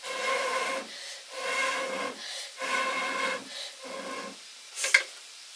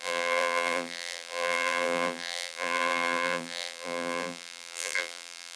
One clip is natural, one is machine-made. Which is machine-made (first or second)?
second